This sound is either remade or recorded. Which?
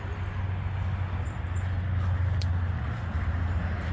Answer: recorded